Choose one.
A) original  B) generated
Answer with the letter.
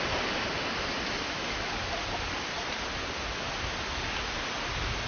A